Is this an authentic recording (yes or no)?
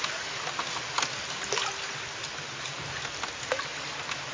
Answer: yes